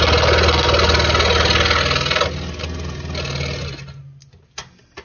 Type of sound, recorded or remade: recorded